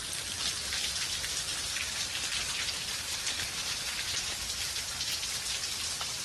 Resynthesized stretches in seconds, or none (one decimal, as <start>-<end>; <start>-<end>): 1.5-5.2